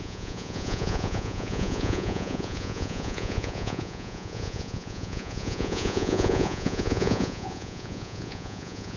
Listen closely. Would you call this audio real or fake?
fake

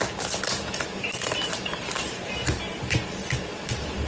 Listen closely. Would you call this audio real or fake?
real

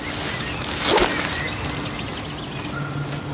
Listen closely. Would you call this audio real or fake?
real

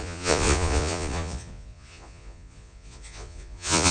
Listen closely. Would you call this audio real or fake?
fake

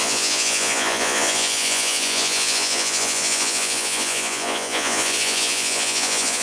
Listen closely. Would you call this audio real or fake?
fake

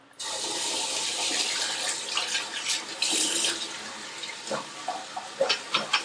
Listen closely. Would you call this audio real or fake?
real